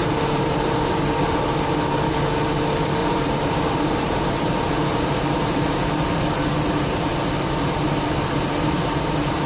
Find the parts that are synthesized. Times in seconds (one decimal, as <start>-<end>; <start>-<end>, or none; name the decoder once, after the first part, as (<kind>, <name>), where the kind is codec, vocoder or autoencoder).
0.0-1.0 (vocoder, BigVGAN v2); 3.0-6.0